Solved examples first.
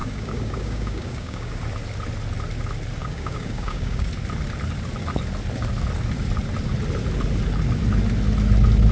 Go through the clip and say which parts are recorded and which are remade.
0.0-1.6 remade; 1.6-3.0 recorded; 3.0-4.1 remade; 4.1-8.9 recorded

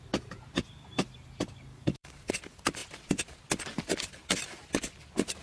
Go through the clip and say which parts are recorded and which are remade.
0.0-1.7 recorded; 1.7-2.3 remade; 2.3-5.4 recorded

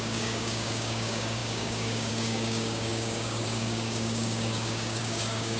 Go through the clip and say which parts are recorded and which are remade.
0.0-5.6 remade

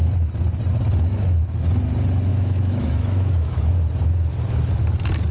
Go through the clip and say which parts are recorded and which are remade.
0.0-2.3 recorded; 2.3-3.7 remade; 3.7-5.3 recorded

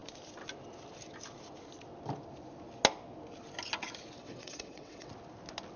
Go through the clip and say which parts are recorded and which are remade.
0.0-4.2 recorded; 4.2-5.1 remade; 5.1-5.8 recorded